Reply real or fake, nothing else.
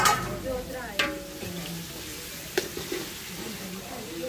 real